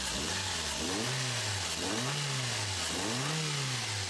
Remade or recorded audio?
recorded